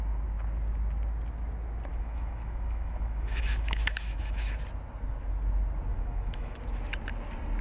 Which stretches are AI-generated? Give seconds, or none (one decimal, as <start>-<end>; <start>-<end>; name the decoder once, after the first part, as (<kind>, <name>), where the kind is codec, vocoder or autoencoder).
1.9-4.6 (autoencoder, DAC-VAE); 5.9-6.6